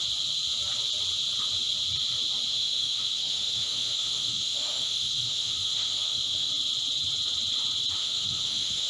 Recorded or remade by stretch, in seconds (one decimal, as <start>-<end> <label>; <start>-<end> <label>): 0.0-2.5 recorded; 2.5-6.5 remade; 6.5-8.0 recorded; 8.0-8.9 remade